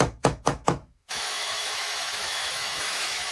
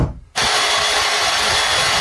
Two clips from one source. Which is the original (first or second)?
second